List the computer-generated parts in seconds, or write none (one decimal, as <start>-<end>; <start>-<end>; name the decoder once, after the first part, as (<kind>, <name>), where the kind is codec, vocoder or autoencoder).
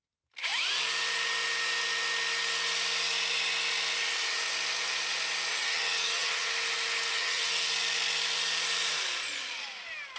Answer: 5.5-6.5 (vocoder, HiFi-GAN); 7.1-7.7